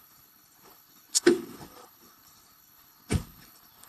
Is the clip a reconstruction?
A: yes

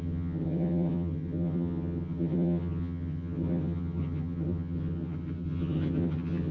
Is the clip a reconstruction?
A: yes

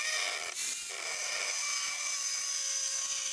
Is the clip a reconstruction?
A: no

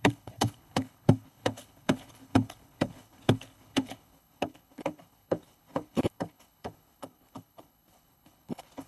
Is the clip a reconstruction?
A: yes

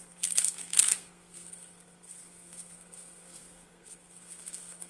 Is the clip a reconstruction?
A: yes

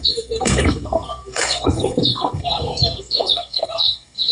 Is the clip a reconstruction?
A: yes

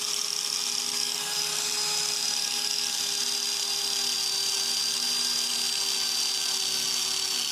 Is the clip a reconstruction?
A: no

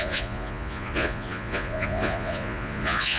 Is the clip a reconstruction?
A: yes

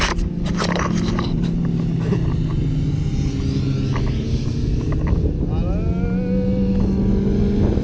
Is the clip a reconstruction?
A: no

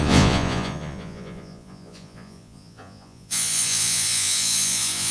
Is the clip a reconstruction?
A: yes